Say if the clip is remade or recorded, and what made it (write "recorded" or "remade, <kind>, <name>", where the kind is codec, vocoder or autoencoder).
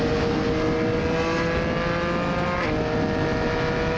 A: recorded